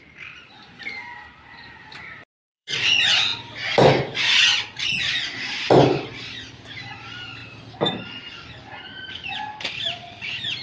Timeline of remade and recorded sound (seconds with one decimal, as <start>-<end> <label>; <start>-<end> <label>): 0.0-4.5 remade; 4.5-5.1 recorded; 5.1-7.4 remade; 7.4-9.1 recorded; 9.1-10.6 remade